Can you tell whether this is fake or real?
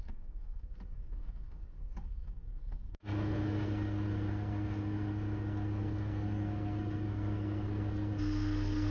fake